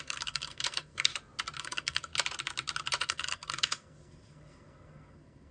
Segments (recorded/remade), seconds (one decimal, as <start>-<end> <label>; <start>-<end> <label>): 0.0-1.1 remade; 1.1-1.6 recorded; 1.6-2.1 remade; 2.1-3.0 recorded; 3.0-5.5 remade

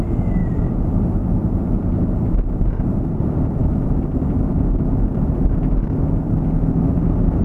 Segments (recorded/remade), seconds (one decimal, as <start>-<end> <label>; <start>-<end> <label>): 0.0-7.4 recorded